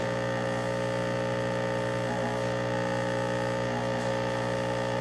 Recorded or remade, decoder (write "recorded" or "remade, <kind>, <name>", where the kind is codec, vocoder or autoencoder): recorded